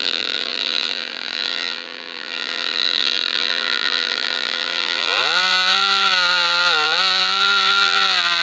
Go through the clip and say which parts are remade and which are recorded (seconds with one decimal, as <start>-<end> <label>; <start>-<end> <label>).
0.0-8.4 remade